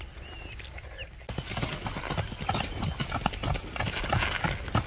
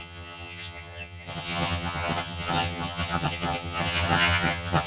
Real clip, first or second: first